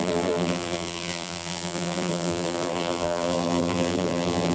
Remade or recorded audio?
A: remade